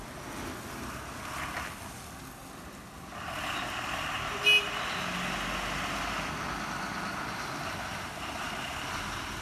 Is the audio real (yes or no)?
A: yes